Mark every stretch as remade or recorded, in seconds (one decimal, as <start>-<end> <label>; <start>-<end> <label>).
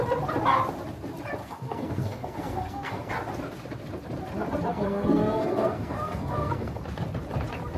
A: 0.0-1.4 recorded; 1.4-3.1 remade; 3.1-4.7 recorded; 4.7-6.8 remade; 6.8-7.8 recorded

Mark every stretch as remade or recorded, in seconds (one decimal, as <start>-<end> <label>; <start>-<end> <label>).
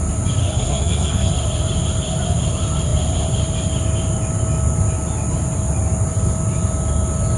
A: 0.0-0.4 recorded; 0.4-1.3 remade; 1.3-7.4 recorded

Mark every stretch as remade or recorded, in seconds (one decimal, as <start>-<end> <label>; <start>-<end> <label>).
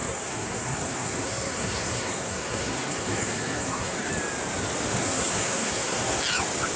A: 0.0-4.1 remade; 4.1-5.0 recorded; 5.0-6.2 remade; 6.2-6.8 recorded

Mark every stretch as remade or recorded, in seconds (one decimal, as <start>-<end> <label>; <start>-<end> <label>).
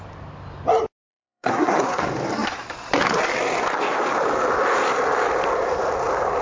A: 0.0-1.1 recorded; 1.1-2.0 remade; 2.0-6.4 recorded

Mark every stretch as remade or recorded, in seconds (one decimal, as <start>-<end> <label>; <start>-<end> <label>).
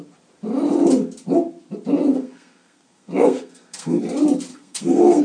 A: 0.0-2.1 recorded; 2.1-4.0 remade; 4.0-4.5 recorded; 4.5-5.2 remade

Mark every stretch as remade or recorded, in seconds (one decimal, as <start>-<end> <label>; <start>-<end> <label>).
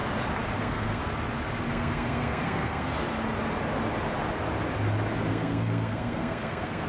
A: 0.0-0.6 recorded; 0.6-1.0 remade; 1.0-1.7 recorded; 1.7-2.9 remade; 2.9-5.3 recorded; 5.3-6.9 remade